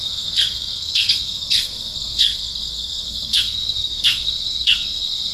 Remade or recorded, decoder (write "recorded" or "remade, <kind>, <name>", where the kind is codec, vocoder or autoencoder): remade, codec, SNAC